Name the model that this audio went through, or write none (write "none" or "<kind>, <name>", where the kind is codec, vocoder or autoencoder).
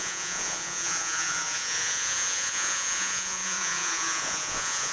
vocoder, Vocos